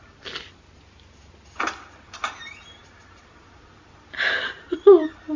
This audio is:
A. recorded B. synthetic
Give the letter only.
A